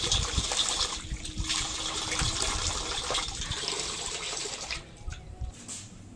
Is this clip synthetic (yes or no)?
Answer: yes